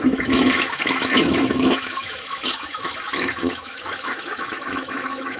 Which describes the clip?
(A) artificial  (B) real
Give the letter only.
A